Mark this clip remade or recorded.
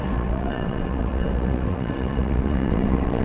remade